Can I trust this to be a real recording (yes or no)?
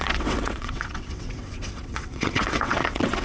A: no